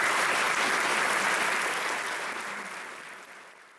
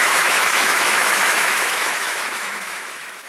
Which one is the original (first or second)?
first